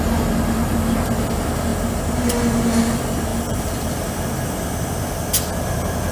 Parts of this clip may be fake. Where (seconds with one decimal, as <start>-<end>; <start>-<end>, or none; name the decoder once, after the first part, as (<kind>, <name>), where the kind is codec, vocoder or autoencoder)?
3.3-3.9 (vocoder, BigVGAN v2)